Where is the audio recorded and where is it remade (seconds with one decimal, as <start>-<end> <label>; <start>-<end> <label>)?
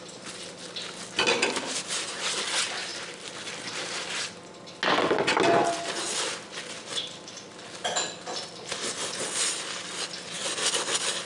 0.0-11.3 recorded